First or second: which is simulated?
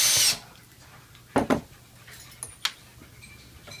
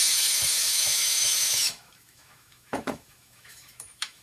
second